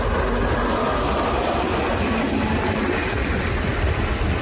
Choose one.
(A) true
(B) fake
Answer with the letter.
A